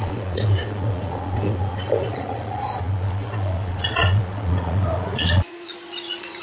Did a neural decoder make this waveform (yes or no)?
yes